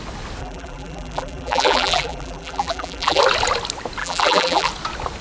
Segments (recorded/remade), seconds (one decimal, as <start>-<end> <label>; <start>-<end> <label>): 0.0-0.4 recorded; 0.4-3.2 remade; 3.2-4.0 recorded; 4.0-4.7 remade; 4.7-5.2 recorded